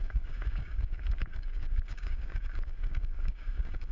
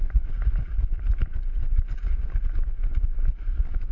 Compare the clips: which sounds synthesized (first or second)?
first